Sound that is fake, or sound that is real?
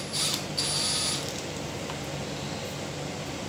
real